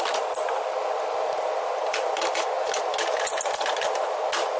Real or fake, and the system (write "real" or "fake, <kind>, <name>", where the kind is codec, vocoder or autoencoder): real